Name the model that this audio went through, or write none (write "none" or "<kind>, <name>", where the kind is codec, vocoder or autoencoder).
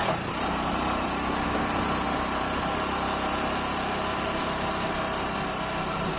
none